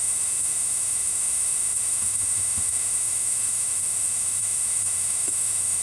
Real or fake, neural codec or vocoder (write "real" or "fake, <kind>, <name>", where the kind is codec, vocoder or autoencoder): fake, autoencoder, DAC-VAE